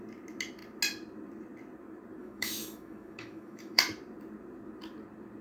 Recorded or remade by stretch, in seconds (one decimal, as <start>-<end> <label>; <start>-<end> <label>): 0.0-2.2 recorded; 2.2-3.8 remade; 3.8-5.4 recorded